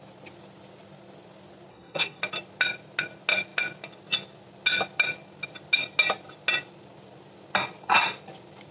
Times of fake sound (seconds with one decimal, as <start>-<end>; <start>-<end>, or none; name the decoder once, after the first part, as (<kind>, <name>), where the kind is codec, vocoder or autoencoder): 1.7-2.2 (codec, SNAC)